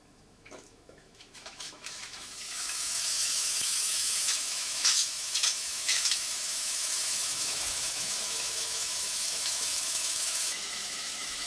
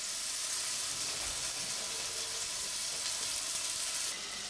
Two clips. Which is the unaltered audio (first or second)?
second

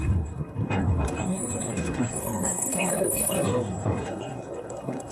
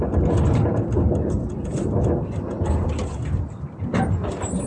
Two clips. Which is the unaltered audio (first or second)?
second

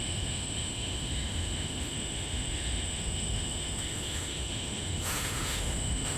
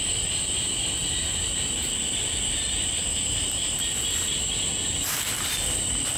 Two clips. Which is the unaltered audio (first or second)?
second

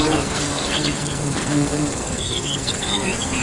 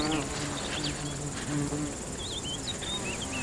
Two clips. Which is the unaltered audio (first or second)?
second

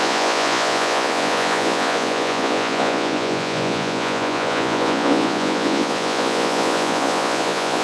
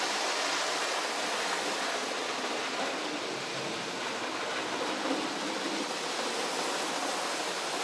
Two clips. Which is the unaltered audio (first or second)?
second